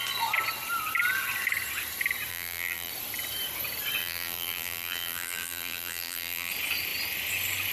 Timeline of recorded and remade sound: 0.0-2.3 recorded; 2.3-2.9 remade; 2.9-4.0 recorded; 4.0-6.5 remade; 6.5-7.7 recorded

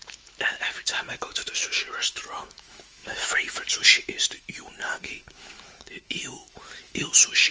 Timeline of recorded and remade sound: 0.0-7.5 remade

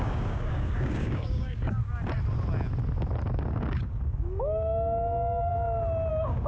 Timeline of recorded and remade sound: 0.0-1.8 remade; 1.8-3.5 recorded; 3.5-5.5 remade; 5.5-6.1 recorded; 6.1-6.5 remade